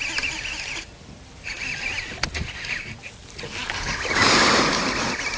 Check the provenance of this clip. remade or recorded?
recorded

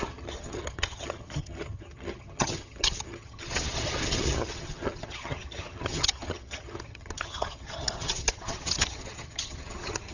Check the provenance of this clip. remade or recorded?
remade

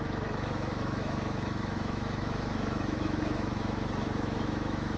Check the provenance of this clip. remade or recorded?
remade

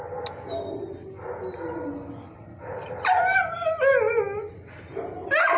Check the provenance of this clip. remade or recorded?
recorded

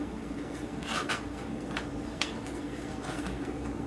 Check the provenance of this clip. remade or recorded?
remade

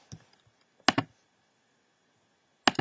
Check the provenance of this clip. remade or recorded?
recorded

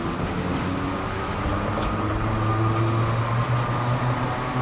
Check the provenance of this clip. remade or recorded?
recorded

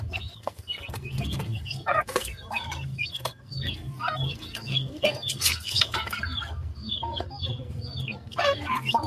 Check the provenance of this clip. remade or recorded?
remade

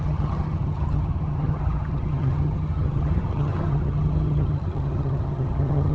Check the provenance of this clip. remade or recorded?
remade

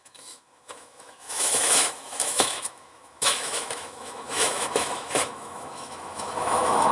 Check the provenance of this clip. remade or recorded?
remade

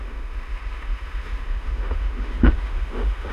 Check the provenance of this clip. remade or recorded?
remade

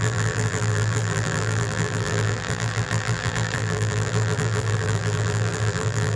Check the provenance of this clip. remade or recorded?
remade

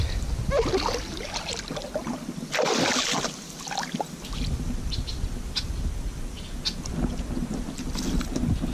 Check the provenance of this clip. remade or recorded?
recorded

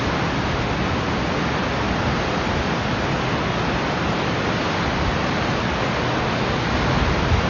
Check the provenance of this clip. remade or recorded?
recorded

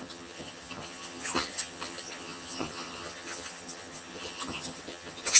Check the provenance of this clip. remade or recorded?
remade